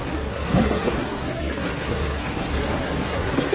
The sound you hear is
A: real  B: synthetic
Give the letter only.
B